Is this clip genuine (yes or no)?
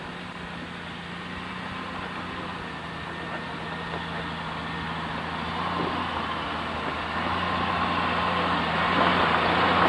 yes